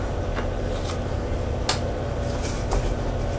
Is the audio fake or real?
real